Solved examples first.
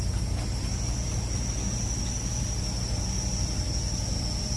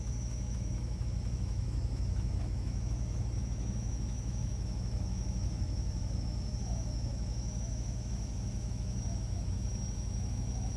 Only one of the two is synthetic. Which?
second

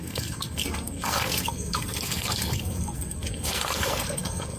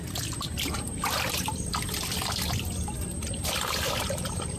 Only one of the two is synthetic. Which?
first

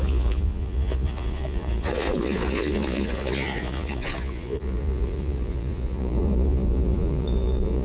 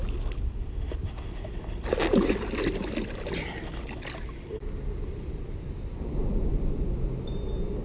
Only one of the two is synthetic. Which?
first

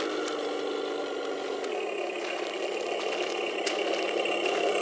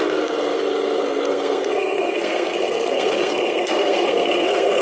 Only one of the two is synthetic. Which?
second